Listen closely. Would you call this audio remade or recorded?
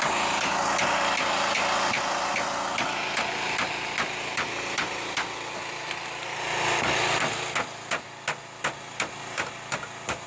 recorded